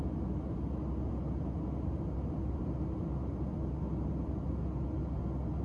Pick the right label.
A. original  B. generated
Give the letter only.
A